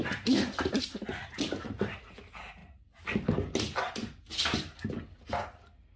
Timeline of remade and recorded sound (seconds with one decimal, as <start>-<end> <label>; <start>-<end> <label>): 0.0-6.0 recorded

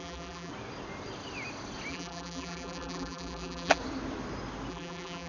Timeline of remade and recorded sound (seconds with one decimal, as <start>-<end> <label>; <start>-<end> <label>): 0.0-0.5 remade; 0.5-1.9 recorded; 1.9-3.8 remade; 3.8-4.7 recorded; 4.7-5.3 remade